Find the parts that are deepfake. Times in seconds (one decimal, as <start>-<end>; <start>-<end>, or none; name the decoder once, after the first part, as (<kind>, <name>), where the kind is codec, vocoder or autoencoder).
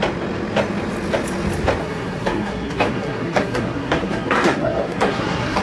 1.8-5.6 (codec, SNAC)